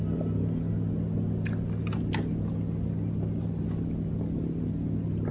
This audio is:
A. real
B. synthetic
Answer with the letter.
A